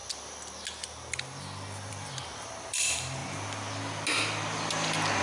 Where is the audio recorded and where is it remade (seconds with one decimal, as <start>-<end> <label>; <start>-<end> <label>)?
0.0-1.9 recorded; 1.9-3.2 remade; 3.2-5.2 recorded